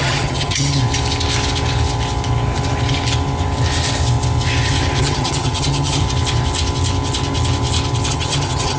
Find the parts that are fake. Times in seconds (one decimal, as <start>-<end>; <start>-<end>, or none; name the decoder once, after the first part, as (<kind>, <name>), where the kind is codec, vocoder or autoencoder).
0.0-0.8 (vocoder, HiFi-GAN); 5.0-6.0; 8.1-8.8